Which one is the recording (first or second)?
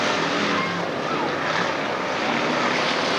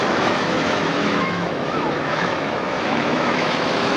first